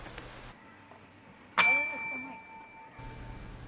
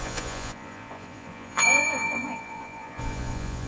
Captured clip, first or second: first